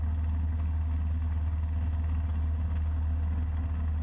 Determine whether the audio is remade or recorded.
recorded